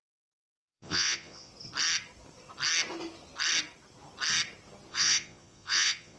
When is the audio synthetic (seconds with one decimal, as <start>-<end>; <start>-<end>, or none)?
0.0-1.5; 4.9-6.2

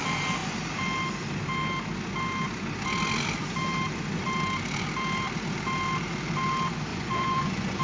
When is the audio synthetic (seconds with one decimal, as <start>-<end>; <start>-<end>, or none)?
6.9-7.8

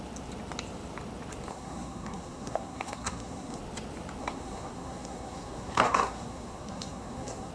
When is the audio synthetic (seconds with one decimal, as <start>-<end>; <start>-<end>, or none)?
1.5-3.6; 4.2-7.5